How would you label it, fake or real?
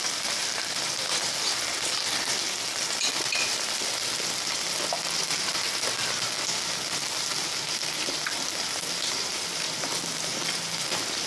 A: real